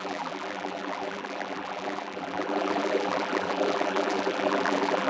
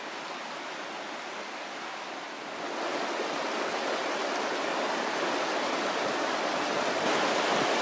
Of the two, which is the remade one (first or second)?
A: first